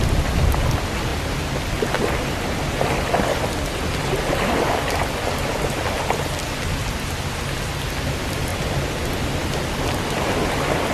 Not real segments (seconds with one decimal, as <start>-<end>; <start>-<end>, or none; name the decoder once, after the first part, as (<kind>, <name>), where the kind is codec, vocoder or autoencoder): none

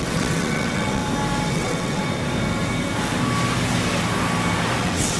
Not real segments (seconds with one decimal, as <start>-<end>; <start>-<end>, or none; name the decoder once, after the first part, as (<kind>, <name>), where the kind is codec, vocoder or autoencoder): 0.0-1.0 (vocoder, WaveNeXt); 1.5-2.0; 4.8-5.2

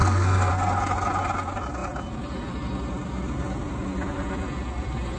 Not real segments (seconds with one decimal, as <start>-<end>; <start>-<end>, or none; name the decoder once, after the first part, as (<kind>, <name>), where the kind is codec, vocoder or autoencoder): 0.0-0.5 (codec, SNAC)

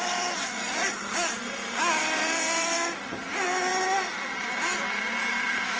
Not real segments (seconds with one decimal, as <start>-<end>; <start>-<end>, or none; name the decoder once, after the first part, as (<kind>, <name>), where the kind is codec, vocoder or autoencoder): none

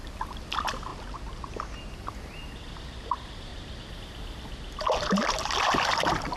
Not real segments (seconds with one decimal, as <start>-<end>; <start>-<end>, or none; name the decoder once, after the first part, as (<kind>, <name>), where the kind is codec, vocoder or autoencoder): 0.0-0.5 (vocoder, BigVGAN v2); 0.9-2.2; 3.5-4.0

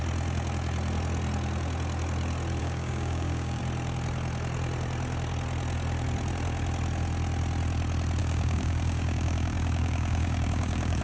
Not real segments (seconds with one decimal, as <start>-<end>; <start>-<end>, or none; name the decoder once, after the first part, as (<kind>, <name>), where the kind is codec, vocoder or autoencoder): 2.6-3.6 (codec, DAC); 8.2-11.0